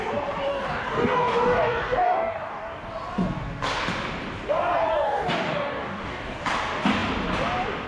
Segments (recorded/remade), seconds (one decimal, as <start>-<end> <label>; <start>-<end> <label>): 0.0-0.5 recorded; 0.5-2.9 remade; 2.9-4.9 recorded; 4.9-6.4 remade; 6.4-7.9 recorded

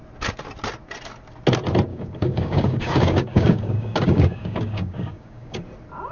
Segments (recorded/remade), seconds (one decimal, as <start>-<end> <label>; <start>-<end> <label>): 0.0-1.9 recorded; 1.9-5.6 remade; 5.6-6.1 recorded

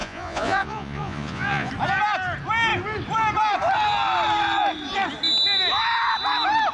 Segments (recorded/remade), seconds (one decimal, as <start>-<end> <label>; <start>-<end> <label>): 0.0-1.7 remade; 1.7-6.7 recorded

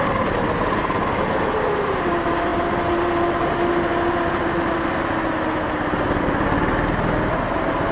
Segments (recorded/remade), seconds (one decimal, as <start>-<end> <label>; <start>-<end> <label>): 0.0-7.9 recorded

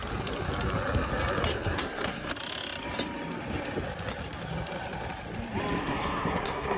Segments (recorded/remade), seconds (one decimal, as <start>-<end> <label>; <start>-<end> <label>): 0.0-1.5 recorded; 1.5-2.3 remade; 2.3-5.8 recorded; 5.8-6.8 remade

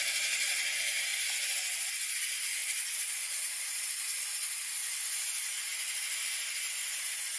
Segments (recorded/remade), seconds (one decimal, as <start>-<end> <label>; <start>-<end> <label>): 0.0-7.4 remade

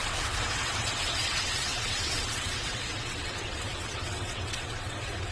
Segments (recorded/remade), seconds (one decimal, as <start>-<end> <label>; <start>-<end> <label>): 0.0-5.3 remade

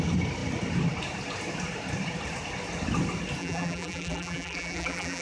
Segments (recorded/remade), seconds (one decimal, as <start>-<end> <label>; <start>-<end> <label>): 0.0-3.4 recorded; 3.4-5.2 remade